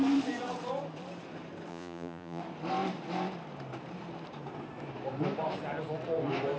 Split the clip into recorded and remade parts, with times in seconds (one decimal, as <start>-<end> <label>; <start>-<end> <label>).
0.0-1.7 recorded; 1.7-2.4 remade; 2.4-6.6 recorded